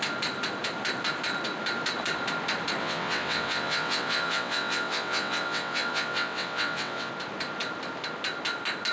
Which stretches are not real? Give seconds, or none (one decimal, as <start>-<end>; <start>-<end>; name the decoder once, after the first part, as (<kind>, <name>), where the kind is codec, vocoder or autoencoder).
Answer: 2.8-7.1 (vocoder, WaveNeXt)